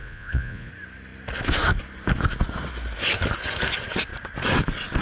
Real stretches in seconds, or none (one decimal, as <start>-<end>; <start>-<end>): 0.7-5.0